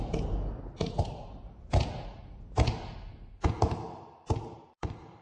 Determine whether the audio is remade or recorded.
recorded